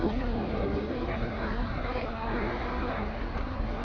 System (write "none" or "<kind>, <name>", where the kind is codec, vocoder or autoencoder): codec, SNAC